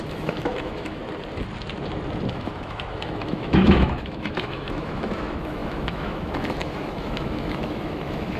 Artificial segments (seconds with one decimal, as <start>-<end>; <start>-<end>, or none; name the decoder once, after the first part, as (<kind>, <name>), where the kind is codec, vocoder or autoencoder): 0.0-1.0 (autoencoder, DAC-VAE); 2.3-8.4